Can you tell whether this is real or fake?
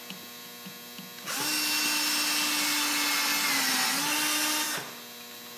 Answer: real